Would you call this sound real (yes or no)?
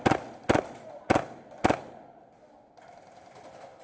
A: yes